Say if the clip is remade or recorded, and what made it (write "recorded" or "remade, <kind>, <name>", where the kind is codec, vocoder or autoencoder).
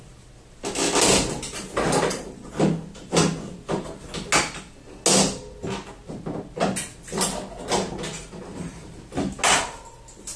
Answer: recorded